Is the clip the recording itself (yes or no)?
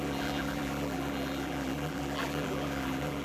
no